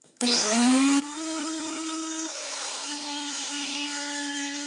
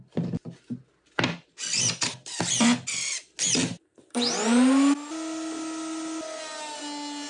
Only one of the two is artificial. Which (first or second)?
first